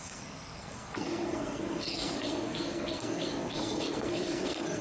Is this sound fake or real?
fake